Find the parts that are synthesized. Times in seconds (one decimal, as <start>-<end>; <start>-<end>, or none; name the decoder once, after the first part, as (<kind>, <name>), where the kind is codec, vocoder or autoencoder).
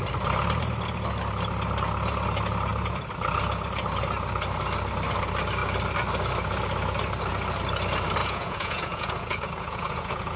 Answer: 8.2-10.4 (vocoder, Vocos)